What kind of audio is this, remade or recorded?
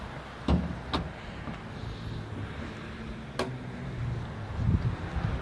recorded